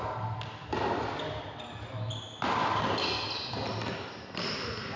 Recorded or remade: recorded